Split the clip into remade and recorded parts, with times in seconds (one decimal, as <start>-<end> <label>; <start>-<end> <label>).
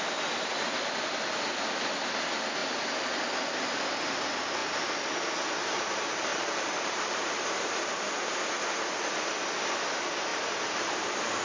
0.0-6.3 recorded; 6.3-8.1 remade; 8.1-10.3 recorded; 10.3-11.4 remade